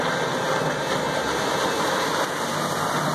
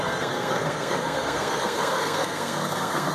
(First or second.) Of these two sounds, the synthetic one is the second